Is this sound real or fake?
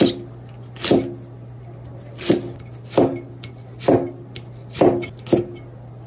real